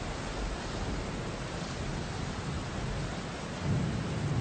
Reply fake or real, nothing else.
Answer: real